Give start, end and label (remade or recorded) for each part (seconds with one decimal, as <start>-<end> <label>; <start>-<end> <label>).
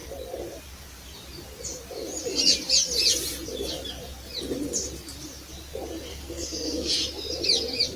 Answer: 0.0-6.1 recorded; 6.1-6.9 remade; 6.9-8.0 recorded